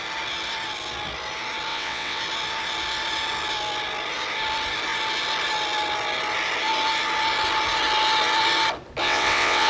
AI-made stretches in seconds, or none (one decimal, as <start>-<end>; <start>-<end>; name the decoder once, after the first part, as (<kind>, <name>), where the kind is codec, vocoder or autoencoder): 1.7-2.2 (vocoder, WaveNeXt); 9.0-9.7